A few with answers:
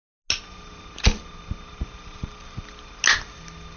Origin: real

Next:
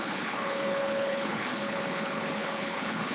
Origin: fake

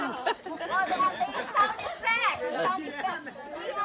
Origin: fake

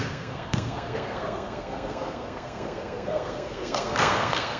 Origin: fake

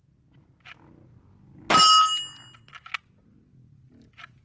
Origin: real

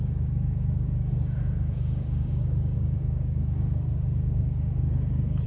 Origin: fake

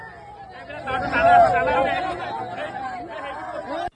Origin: real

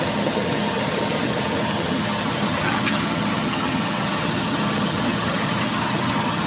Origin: fake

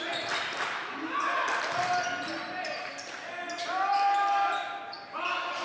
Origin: real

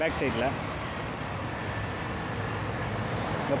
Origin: real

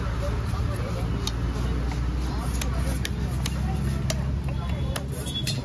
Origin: real